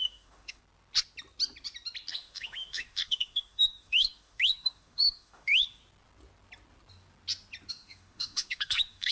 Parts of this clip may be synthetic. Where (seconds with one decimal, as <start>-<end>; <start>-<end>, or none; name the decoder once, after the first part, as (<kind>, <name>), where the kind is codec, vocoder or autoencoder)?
0.0-0.6 (autoencoder, DAC-VAE); 2.1-5.8; 7.7-9.1

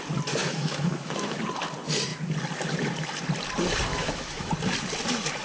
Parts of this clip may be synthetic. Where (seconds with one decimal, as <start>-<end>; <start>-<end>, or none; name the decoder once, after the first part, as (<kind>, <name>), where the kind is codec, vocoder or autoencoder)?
0.4-1.4 (autoencoder, DAC-VAE); 3.9-4.5

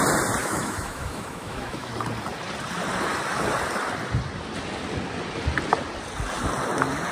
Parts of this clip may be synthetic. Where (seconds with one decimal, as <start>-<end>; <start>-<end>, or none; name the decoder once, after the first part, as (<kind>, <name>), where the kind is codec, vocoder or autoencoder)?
0.4-1.9 (autoencoder, DAC-VAE)

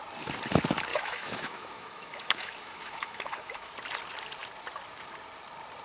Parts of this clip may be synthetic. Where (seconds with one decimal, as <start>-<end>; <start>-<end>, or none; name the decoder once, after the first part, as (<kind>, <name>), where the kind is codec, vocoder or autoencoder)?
0.9-3.7 (autoencoder, DAC-VAE)